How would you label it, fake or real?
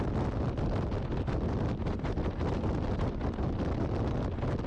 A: real